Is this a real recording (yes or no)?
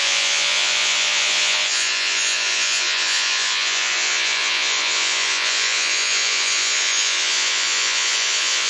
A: no